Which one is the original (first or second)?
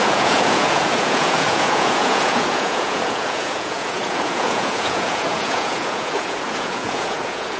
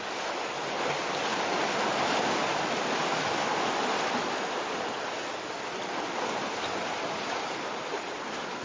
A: second